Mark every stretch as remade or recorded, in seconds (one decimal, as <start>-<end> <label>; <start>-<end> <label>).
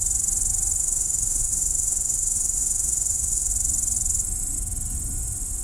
0.0-0.8 recorded; 0.8-3.5 remade; 3.5-5.6 recorded